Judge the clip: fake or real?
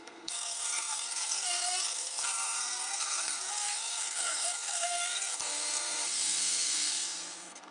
fake